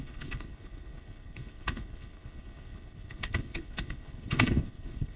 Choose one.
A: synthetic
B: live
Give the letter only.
A